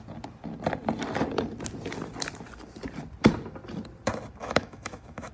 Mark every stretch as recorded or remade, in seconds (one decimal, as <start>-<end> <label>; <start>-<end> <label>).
0.0-4.4 recorded; 4.4-5.3 remade